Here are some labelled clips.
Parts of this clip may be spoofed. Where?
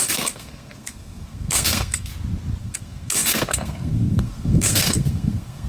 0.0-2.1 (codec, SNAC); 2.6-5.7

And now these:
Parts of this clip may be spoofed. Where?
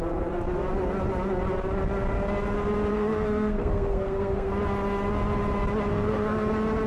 2.9-4.5 (codec, SNAC); 5.9-6.5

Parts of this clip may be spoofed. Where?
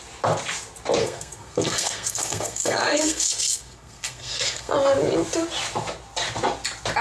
1.0-4.7 (codec, SNAC)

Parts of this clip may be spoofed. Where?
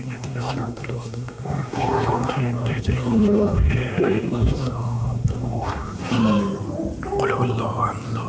0.0-6.2 (codec, SNAC)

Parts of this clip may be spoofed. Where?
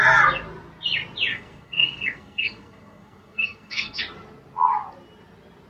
1.3-4.0 (codec, SNAC)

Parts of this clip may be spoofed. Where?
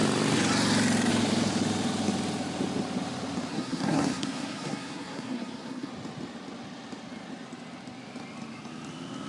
3.5-5.9 (codec, SNAC)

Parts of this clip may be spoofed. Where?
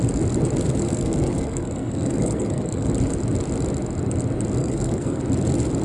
0.8-2.9 (codec, SNAC); 4.6-5.2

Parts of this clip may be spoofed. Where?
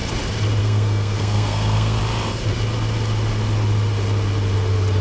0.6-2.0 (codec, SNAC)